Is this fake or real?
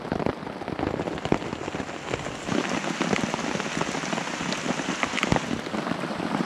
real